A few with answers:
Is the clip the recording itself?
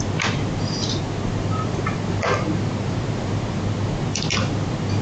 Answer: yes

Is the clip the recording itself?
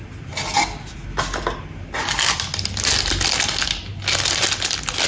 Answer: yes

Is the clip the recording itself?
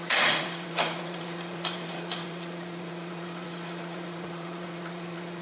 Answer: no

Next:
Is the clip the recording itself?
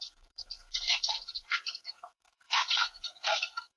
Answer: no